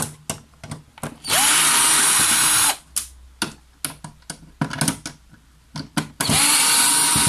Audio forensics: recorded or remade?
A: recorded